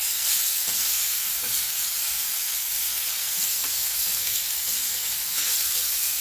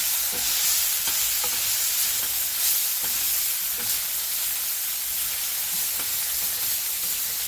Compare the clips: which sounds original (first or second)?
second